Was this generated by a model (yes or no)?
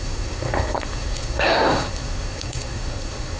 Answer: yes